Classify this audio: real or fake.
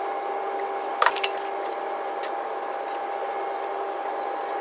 real